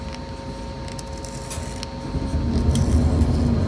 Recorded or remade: recorded